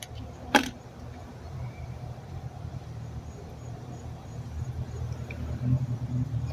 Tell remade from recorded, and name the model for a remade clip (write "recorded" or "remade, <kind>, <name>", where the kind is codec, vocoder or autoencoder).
remade, vocoder, BigVGAN v2